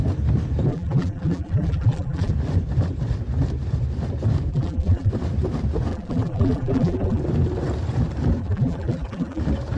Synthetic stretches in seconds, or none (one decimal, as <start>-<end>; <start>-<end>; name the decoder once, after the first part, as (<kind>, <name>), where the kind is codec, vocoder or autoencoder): 0.7-2.3 (vocoder, BigVGAN v2); 4.5-5.1; 5.9-7.2; 8.4-9.4